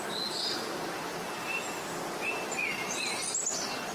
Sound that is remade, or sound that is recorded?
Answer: recorded